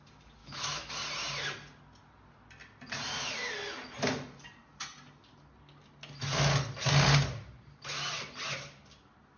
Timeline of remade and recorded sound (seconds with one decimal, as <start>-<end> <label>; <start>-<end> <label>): 0.0-0.4 recorded; 0.4-0.9 remade; 0.9-9.4 recorded